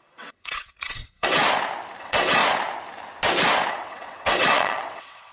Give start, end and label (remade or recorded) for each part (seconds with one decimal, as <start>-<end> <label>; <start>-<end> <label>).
0.0-1.4 remade; 1.4-2.0 recorded; 2.0-2.4 remade; 2.4-3.7 recorded; 3.7-5.3 remade